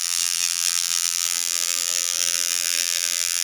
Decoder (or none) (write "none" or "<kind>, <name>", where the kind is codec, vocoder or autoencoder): vocoder, BigVGAN v2